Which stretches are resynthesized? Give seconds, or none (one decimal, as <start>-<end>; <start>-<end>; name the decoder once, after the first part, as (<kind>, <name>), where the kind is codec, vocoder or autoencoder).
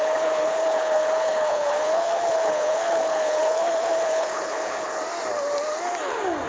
0.0-5.0 (codec, HILCodec)